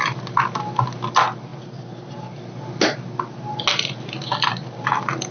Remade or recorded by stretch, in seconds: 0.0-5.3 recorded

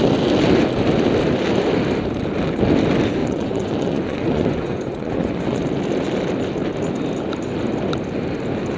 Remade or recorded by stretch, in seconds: 0.0-3.2 recorded; 3.2-5.6 remade; 5.6-8.8 recorded

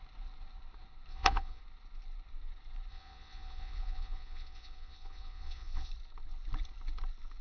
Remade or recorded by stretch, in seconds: 0.0-1.1 recorded; 1.1-1.6 remade; 1.6-2.9 recorded; 2.9-5.9 remade; 5.9-7.4 recorded

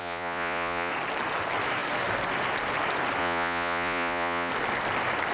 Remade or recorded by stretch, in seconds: 0.0-0.9 remade; 0.9-3.2 recorded; 3.2-4.5 remade; 4.5-5.3 recorded

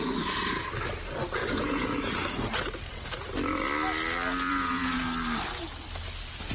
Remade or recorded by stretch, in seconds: 0.0-1.4 recorded; 1.4-2.1 remade; 2.1-4.5 recorded; 4.5-5.0 remade; 5.0-6.5 recorded

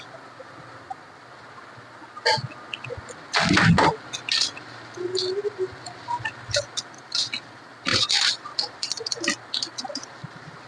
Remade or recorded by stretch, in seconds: 0.0-7.9 recorded; 7.9-9.2 remade; 9.2-10.7 recorded